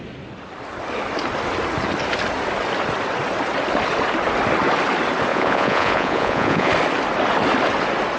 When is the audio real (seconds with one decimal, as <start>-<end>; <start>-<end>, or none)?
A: 0.0-5.3; 6.7-8.2